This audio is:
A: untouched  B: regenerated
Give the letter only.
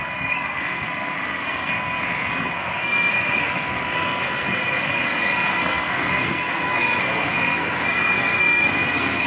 B